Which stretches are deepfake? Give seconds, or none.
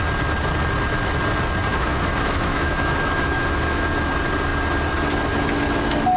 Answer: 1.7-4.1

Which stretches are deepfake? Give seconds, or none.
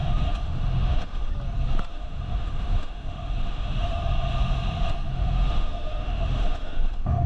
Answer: 0.0-1.3; 1.9-4.0; 5.1-7.3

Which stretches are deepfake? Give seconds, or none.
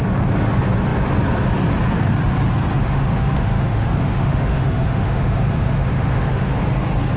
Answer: 2.8-6.6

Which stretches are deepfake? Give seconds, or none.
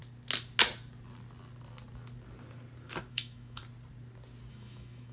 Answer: 3.1-3.6; 4.5-5.1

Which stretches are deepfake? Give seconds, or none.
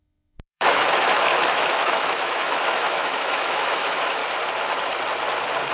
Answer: 0.0-4.2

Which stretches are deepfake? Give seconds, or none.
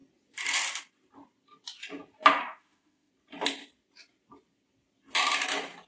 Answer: 2.4-3.1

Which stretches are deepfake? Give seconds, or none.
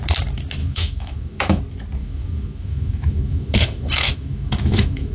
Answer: 0.6-1.6; 2.0-5.1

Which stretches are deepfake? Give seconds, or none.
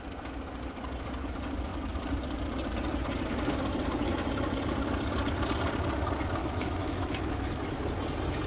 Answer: 6.4-7.8